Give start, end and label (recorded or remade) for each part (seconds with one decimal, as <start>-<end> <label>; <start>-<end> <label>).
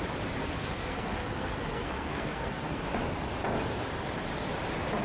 0.0-0.4 recorded; 0.4-2.8 remade; 2.8-5.0 recorded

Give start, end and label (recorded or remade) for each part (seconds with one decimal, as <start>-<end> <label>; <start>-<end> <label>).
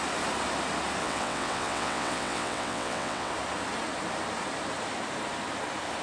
0.0-1.0 recorded; 1.0-3.3 remade; 3.3-6.0 recorded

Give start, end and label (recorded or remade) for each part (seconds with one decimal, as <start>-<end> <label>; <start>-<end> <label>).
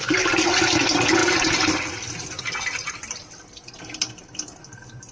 0.0-5.1 recorded